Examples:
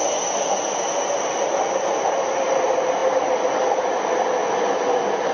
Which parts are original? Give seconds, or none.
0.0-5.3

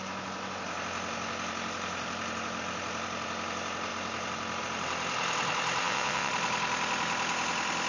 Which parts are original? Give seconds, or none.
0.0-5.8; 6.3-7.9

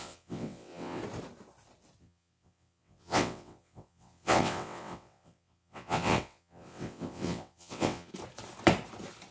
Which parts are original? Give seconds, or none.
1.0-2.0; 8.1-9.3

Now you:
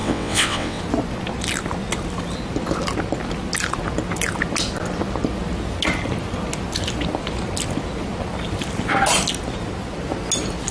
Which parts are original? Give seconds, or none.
0.8-10.7

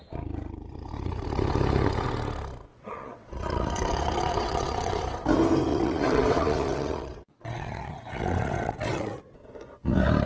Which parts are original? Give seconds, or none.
0.0-2.7; 5.0-5.7; 9.2-10.3